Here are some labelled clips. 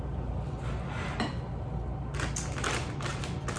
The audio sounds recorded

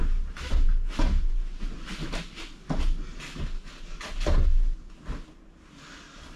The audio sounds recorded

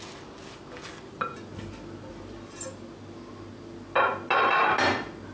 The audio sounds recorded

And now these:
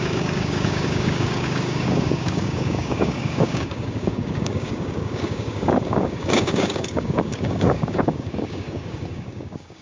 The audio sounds remade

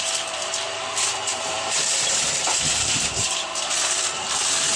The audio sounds remade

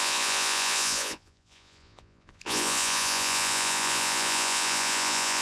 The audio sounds remade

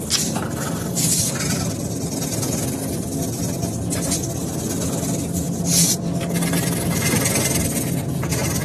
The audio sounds recorded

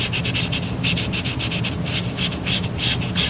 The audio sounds recorded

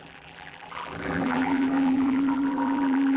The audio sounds remade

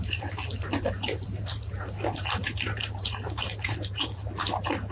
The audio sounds remade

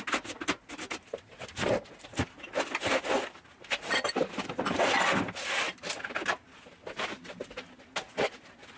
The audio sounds recorded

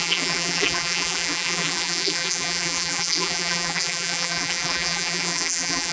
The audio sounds remade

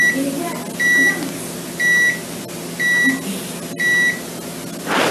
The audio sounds recorded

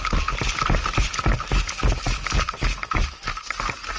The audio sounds recorded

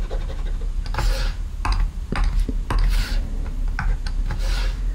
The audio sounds recorded